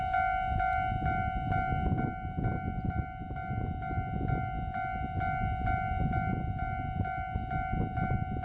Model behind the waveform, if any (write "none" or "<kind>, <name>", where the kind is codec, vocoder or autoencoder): none